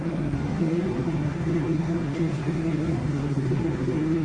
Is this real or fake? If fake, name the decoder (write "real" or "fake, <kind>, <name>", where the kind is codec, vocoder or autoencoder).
fake, codec, SNAC